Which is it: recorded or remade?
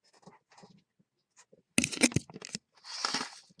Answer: recorded